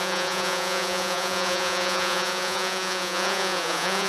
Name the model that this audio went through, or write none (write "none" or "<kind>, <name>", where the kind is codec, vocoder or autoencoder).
vocoder, Vocos